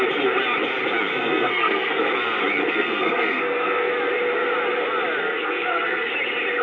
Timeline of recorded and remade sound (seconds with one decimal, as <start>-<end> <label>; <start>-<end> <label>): 0.0-1.1 recorded; 1.1-2.0 remade; 2.0-2.7 recorded; 2.7-3.9 remade; 3.9-5.2 recorded; 5.2-6.1 remade; 6.1-6.6 recorded